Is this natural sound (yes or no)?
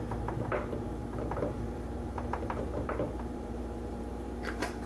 no